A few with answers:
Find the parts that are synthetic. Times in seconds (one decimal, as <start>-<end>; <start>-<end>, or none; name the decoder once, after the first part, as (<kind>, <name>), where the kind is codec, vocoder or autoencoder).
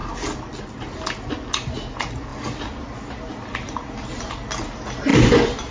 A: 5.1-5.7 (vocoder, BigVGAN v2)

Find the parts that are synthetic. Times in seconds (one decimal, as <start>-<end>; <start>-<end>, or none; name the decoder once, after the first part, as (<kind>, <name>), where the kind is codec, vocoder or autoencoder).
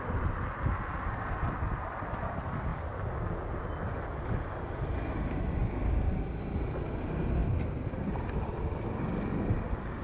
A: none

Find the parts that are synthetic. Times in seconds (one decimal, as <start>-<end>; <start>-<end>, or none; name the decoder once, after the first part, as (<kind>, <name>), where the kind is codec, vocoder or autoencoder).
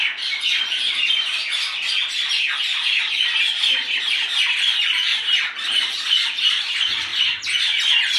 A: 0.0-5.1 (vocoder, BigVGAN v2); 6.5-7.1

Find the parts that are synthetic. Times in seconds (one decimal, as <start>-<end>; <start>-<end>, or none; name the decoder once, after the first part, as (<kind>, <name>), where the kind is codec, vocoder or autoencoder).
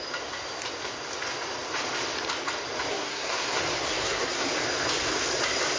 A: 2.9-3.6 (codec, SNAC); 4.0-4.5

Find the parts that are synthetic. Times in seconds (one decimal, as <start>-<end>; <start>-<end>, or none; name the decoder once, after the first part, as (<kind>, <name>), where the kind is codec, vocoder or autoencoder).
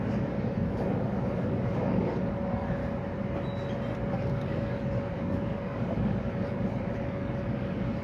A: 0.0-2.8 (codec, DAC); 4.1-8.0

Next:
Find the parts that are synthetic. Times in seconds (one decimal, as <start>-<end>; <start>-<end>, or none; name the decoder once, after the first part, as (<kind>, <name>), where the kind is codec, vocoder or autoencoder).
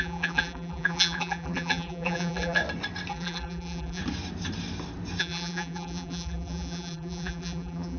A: 0.0-2.6 (vocoder, BigVGAN v2); 3.1-4.0; 5.2-8.0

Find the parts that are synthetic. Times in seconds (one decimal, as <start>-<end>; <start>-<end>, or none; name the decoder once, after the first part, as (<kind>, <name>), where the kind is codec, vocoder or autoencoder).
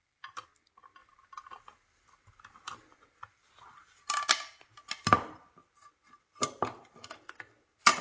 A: none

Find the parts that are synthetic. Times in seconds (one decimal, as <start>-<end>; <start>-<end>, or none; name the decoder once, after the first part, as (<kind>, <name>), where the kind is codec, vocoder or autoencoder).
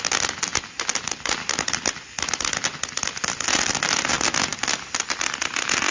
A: none